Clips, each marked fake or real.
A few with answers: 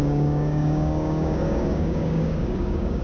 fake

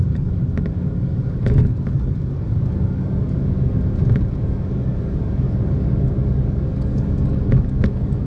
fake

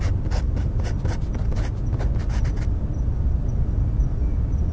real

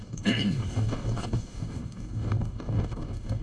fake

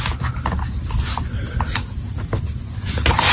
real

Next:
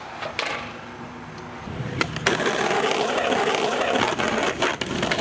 real